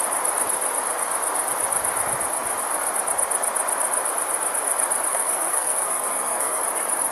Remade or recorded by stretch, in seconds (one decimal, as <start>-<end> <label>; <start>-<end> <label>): 0.0-5.1 recorded; 5.1-6.6 remade; 6.6-7.1 recorded